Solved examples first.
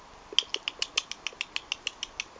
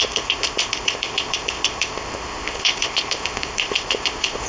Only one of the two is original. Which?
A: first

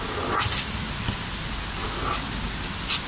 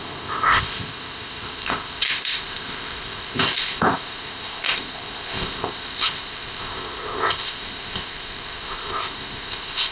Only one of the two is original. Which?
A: first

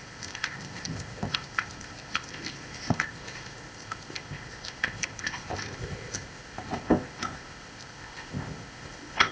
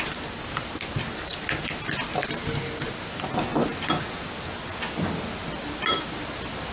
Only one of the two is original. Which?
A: second